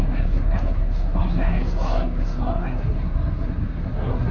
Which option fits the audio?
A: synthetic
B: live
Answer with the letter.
A